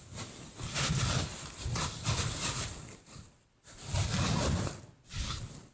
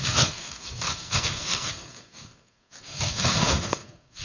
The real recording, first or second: first